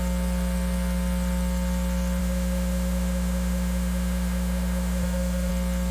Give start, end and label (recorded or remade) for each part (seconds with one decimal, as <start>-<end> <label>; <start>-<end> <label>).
0.0-2.2 recorded; 2.2-5.5 remade; 5.5-5.9 recorded